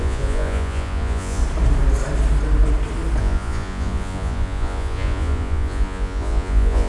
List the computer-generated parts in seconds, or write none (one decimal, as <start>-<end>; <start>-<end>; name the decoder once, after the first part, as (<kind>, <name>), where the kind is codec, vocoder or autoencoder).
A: 0.0-1.4 (vocoder, Vocos); 3.2-6.9